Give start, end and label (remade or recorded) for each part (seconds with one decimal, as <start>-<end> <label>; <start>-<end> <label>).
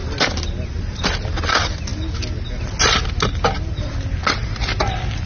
0.0-5.3 recorded